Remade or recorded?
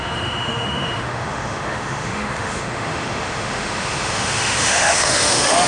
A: remade